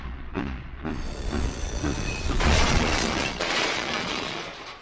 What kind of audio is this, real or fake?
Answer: fake